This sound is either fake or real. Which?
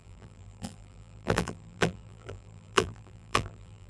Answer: fake